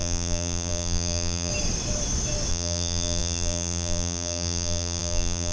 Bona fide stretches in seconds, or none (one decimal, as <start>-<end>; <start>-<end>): 1.5-2.5